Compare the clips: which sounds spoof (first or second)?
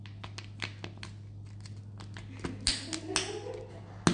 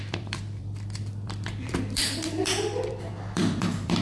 second